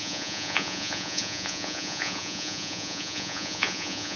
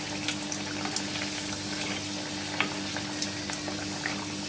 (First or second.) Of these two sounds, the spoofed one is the first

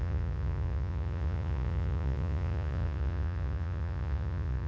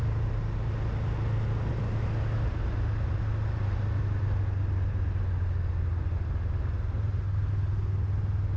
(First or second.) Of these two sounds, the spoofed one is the first